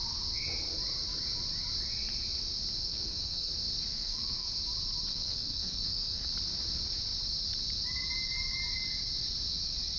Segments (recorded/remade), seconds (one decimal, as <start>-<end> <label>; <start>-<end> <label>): 0.0-2.8 recorded; 2.8-3.5 remade; 3.5-3.9 recorded; 3.9-4.5 remade; 4.5-5.1 recorded; 5.1-6.3 remade; 6.3-10.0 recorded